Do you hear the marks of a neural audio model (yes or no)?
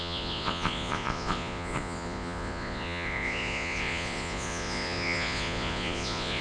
yes